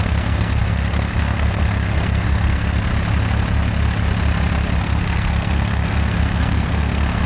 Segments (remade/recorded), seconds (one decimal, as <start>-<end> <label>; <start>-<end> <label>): 0.0-2.9 remade; 2.9-4.8 recorded; 4.8-7.3 remade